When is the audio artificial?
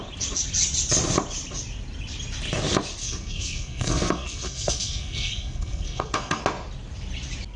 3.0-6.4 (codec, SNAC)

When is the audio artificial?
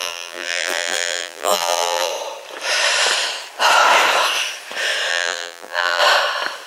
0.0-2.1 (vocoder, BigVGAN v2); 5.1-6.0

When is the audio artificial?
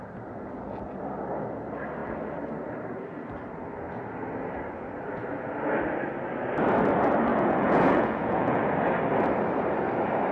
7.3-8.6 (vocoder, Vocos)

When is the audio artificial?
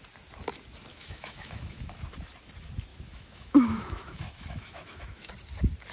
0.9-1.9 (autoencoder, DAC-VAE); 2.9-5.3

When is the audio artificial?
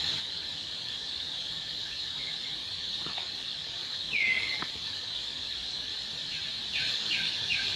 0.0-5.9 (codec, DAC); 6.9-7.8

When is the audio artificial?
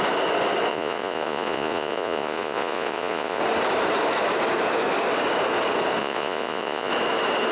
0.7-3.4 (vocoder, Vocos); 6.0-6.9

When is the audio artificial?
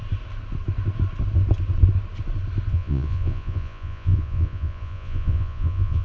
2.7-6.0 (vocoder, Vocos)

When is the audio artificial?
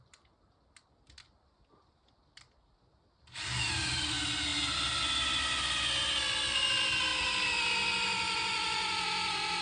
none